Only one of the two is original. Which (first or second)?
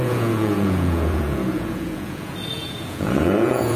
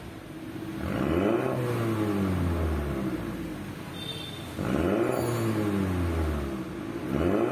second